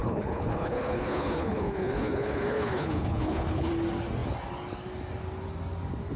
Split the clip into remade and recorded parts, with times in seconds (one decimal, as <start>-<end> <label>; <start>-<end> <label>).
0.0-3.7 remade; 3.7-6.2 recorded